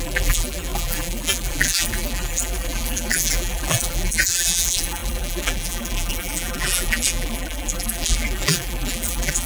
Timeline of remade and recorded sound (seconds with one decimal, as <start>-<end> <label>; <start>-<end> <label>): 0.0-9.5 remade